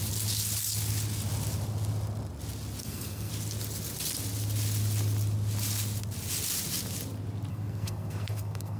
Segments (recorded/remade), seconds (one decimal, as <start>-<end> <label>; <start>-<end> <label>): 0.0-2.8 recorded; 2.8-3.3 remade; 3.3-7.5 recorded; 7.5-8.8 remade